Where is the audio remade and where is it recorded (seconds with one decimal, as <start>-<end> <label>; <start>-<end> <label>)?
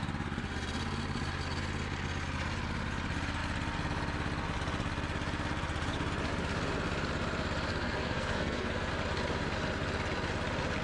0.0-7.7 recorded; 7.7-8.9 remade; 8.9-10.8 recorded